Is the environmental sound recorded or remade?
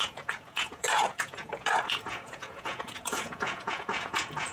remade